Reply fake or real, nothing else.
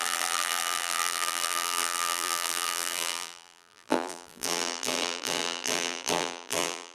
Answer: fake